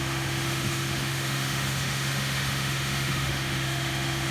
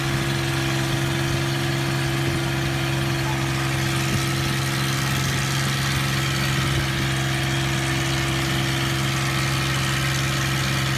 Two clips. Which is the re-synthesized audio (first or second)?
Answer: first